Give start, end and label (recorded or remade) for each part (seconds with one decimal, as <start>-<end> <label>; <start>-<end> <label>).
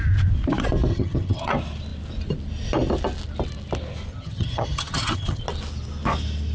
0.0-0.9 recorded; 0.9-1.5 remade; 1.5-4.1 recorded; 4.1-5.4 remade; 5.4-6.5 recorded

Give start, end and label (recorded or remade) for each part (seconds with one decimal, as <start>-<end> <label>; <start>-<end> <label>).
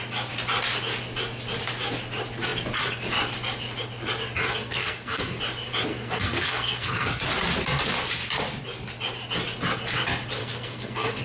0.0-4.5 recorded; 4.5-5.4 remade; 5.4-5.9 recorded; 5.9-7.2 remade; 7.2-10.4 recorded; 10.4-11.2 remade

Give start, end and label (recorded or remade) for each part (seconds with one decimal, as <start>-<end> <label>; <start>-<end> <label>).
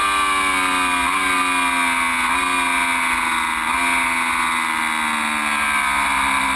0.0-6.6 recorded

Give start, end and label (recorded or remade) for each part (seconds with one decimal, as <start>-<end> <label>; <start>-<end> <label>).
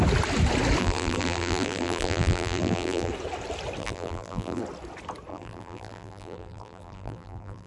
0.0-0.8 recorded; 0.8-3.1 remade; 3.1-3.8 recorded; 3.8-4.6 remade; 4.6-5.3 recorded; 5.3-7.7 remade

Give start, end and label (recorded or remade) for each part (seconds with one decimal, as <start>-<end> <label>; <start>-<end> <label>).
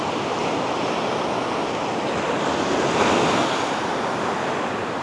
0.0-5.0 recorded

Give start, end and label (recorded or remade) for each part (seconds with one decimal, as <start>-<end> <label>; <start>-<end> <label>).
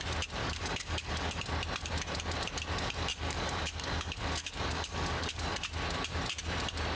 0.0-0.4 recorded; 0.4-1.4 remade; 1.4-3.1 recorded; 3.1-5.4 remade; 5.4-7.0 recorded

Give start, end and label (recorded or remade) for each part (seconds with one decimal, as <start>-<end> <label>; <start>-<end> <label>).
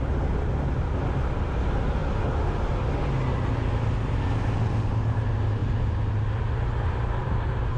0.0-7.8 recorded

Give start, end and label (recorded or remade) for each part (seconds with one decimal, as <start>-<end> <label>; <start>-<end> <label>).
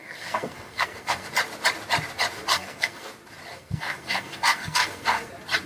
0.0-1.3 remade; 1.3-2.5 recorded; 2.5-3.1 remade; 3.1-3.5 recorded; 3.5-5.3 remade; 5.3-5.7 recorded